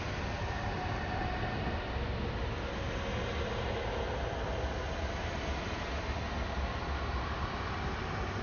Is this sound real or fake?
real